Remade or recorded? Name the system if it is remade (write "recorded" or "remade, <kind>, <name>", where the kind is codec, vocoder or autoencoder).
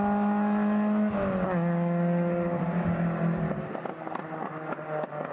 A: recorded